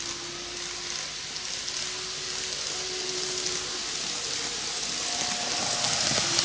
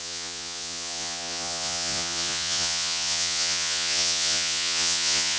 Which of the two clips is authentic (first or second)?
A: first